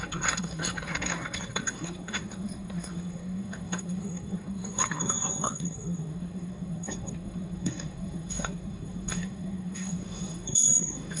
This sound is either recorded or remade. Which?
remade